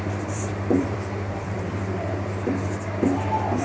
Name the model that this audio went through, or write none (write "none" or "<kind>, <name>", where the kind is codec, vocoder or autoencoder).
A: vocoder, BigVGAN v2